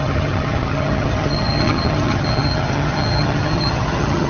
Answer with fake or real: fake